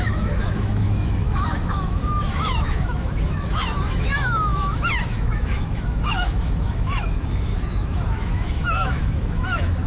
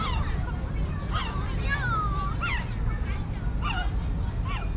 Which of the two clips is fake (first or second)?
first